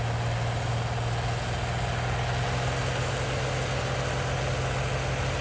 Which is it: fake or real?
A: real